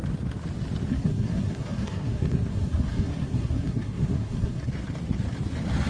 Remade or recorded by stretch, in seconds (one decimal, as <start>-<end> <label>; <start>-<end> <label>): 0.0-0.9 recorded; 0.9-4.7 remade; 4.7-5.9 recorded